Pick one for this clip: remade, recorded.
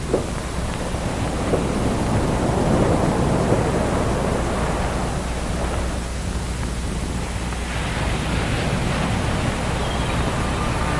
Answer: recorded